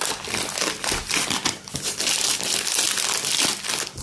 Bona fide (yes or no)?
yes